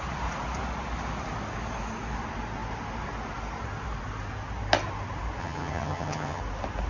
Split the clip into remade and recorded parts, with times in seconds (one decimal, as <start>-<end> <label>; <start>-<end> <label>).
0.0-5.4 recorded; 5.4-6.4 remade; 6.4-6.9 recorded